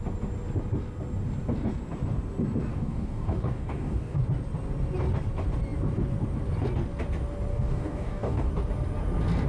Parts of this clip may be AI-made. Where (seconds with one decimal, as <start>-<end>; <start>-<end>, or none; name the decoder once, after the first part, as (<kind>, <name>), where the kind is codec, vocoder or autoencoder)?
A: 2.7-4.2 (codec, DAC); 7.5-8.5